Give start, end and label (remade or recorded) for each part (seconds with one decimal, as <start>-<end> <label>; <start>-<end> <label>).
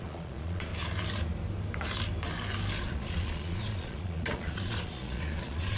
0.0-0.7 remade; 0.7-2.8 recorded; 2.8-5.8 remade